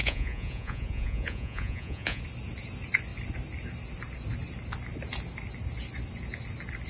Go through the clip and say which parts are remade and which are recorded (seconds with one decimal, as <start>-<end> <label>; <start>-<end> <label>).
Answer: 0.0-2.2 remade; 2.2-6.9 recorded